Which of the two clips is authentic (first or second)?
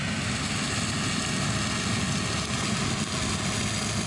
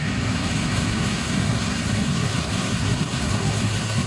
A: first